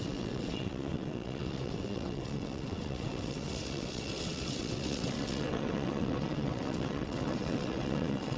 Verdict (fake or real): fake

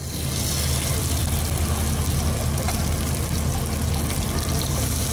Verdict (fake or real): real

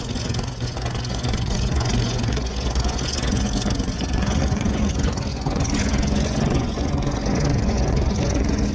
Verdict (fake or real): fake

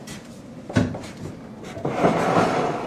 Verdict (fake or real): fake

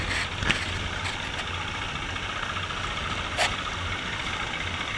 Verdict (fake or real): real